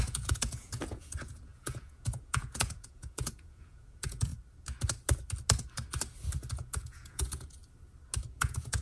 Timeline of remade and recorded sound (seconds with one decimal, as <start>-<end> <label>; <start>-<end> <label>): 0.0-4.3 remade; 4.3-6.5 recorded; 6.5-7.6 remade; 7.6-8.3 recorded; 8.3-8.8 remade